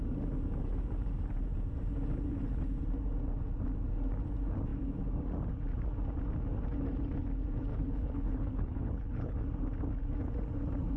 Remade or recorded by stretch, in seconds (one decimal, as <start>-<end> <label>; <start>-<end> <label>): 0.0-7.7 recorded; 7.7-9.4 remade; 9.4-11.0 recorded